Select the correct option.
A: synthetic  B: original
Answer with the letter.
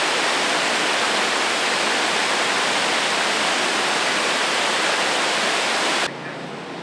B